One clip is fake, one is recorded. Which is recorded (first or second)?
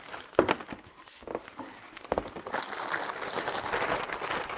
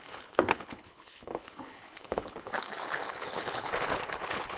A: first